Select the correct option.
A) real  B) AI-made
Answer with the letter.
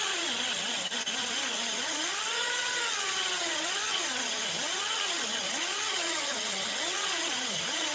B